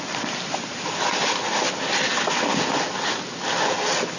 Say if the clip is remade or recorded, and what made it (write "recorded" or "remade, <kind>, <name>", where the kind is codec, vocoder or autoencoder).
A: recorded